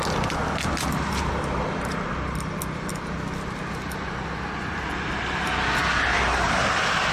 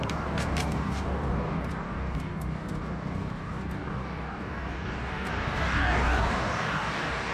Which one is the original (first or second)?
first